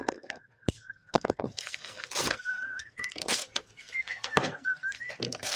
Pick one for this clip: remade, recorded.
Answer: remade